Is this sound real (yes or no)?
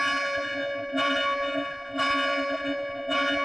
no